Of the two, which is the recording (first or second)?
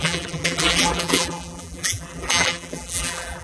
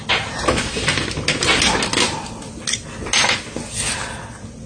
second